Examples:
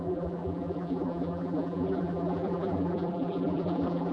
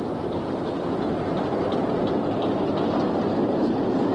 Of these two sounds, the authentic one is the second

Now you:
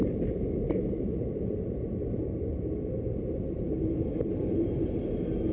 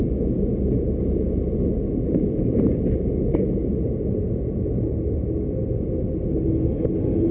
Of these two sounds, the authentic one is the second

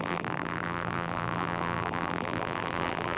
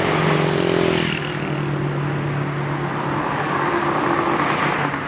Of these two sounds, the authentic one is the second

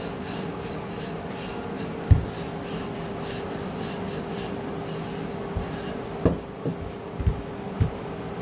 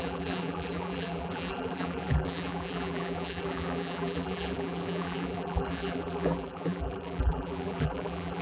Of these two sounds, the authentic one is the first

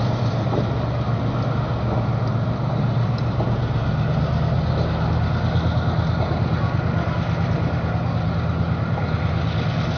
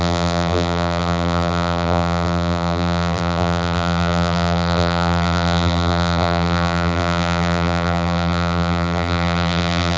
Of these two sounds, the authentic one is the first